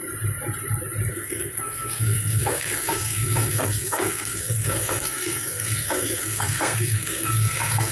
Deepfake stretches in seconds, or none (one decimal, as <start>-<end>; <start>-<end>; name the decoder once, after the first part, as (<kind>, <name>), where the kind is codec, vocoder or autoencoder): 1.1-7.9 (codec, SNAC)